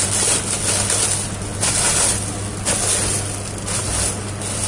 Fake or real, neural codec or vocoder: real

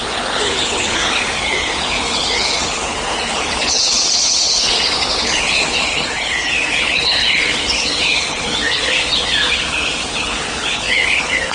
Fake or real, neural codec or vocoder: fake, codec, HILCodec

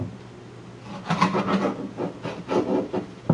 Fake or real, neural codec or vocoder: real